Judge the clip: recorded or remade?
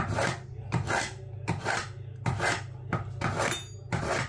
recorded